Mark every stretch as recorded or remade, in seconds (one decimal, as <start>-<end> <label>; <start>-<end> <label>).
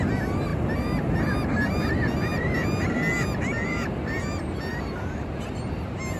0.0-4.7 recorded; 4.7-5.4 remade; 5.4-6.2 recorded